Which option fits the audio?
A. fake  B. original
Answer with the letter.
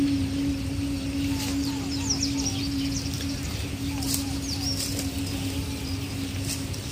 B